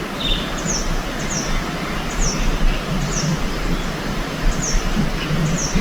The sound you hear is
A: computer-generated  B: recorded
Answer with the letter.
B